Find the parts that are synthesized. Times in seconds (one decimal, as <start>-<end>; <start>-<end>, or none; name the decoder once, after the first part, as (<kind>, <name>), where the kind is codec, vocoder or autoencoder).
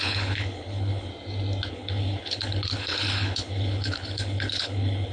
0.0-1.1 (codec, HILCodec); 1.7-5.1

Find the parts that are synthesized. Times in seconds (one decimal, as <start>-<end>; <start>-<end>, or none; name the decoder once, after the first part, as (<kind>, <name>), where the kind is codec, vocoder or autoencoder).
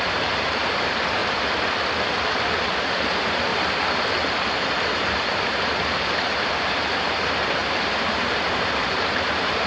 0.0-1.2 (vocoder, BigVGAN v2); 2.0-3.5; 5.9-9.7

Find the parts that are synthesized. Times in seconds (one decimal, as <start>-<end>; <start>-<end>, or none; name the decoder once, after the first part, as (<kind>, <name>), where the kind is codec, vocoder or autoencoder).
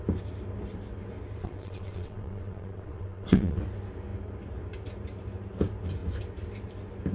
1.4-3.6 (vocoder, WaveNeXt)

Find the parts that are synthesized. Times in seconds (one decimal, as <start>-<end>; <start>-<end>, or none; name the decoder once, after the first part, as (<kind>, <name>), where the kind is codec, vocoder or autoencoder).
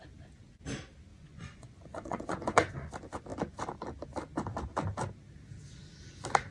1.1-2.9 (vocoder, Vocos)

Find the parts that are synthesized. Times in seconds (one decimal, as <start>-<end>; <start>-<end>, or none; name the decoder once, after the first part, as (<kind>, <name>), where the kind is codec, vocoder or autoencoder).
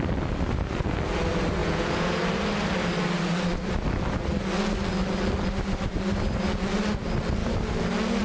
1.6-2.2 (vocoder, Vocos)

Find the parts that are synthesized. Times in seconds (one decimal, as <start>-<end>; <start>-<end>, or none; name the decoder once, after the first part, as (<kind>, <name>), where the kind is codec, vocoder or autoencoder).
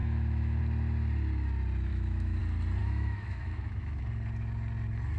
0.0-0.6 (autoencoder, DAC-VAE); 1.9-2.4; 2.8-4.0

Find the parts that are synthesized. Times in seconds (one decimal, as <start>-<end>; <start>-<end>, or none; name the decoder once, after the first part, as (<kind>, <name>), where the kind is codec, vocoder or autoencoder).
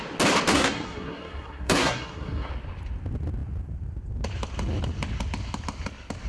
0.5-2.5 (codec, SNAC)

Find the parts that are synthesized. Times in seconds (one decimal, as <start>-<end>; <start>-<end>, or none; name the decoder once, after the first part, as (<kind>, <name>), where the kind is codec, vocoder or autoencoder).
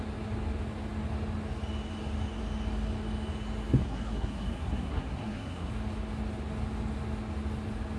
3.8-5.7 (codec, SNAC)